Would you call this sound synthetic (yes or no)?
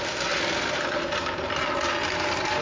no